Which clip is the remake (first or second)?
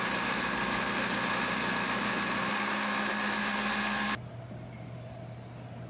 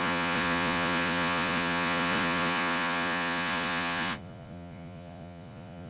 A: second